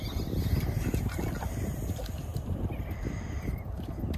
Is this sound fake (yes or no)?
no